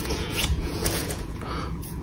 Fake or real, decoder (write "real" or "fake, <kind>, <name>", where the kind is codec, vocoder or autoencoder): fake, vocoder, Vocos